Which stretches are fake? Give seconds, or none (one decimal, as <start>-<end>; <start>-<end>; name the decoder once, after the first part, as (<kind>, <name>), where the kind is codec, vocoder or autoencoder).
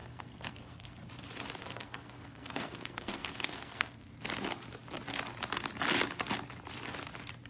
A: 0.0-1.1 (codec, SNAC); 1.6-4.1